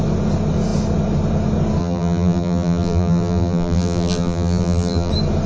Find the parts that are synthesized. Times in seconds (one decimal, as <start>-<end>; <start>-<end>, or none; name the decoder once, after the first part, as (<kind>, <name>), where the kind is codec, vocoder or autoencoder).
1.8-5.1 (vocoder, BigVGAN v2)